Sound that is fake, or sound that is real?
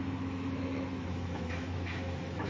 fake